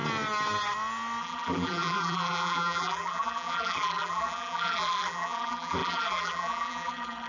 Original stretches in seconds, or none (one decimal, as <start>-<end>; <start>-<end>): 0.0-1.2